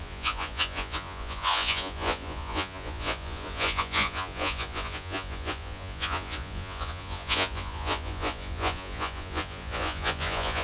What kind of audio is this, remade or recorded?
remade